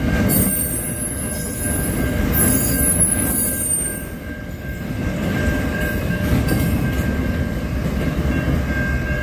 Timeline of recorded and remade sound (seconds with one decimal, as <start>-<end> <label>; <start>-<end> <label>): 0.0-3.9 recorded; 3.9-8.0 remade; 8.0-9.2 recorded